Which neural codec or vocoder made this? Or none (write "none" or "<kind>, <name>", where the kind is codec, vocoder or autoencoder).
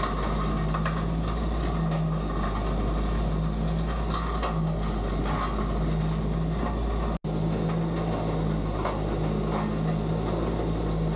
none